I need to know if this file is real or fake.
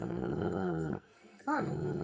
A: fake